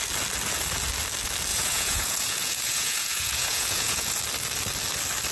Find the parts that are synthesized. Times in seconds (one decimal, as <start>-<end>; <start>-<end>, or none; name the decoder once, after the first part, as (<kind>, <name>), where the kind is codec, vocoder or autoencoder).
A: 1.5-4.2 (vocoder, Vocos)

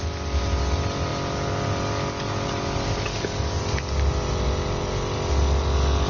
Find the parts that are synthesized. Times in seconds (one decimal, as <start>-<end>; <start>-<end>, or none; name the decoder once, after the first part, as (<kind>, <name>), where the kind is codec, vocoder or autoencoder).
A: none

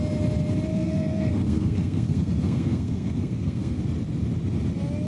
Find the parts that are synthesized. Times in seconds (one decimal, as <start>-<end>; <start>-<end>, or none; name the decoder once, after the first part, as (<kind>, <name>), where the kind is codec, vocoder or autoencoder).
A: 0.7-3.8 (codec, SNAC)

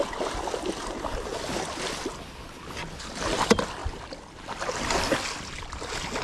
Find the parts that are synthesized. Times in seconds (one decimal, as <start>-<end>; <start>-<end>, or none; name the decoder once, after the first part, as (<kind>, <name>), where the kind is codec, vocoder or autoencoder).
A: none

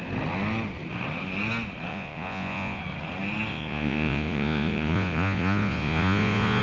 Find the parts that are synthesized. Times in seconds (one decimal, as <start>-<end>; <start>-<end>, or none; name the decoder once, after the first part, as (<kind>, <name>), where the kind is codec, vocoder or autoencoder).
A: 1.9-2.8 (vocoder, Vocos); 3.5-6.6